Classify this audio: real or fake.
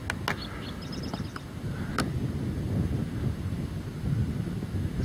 real